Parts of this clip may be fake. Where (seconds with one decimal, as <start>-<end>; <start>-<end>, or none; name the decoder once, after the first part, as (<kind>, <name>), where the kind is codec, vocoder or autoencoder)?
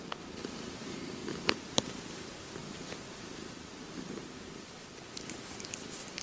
none